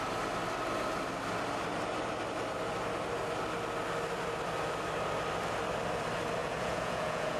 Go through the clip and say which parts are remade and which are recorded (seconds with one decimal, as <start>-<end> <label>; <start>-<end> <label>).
0.0-6.4 recorded; 6.4-7.4 remade